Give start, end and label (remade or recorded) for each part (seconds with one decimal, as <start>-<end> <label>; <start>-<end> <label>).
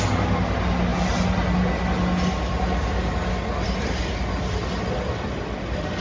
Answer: 0.0-6.0 recorded